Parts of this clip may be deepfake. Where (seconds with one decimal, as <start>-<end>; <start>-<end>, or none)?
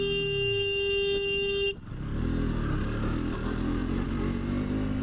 none